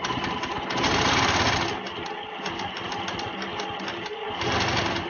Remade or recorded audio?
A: recorded